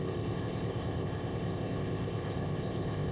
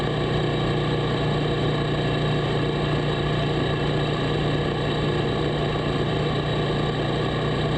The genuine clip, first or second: second